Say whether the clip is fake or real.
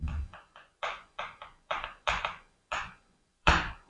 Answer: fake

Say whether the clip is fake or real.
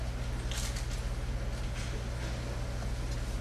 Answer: real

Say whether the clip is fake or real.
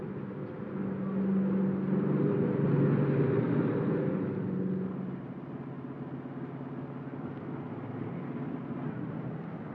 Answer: real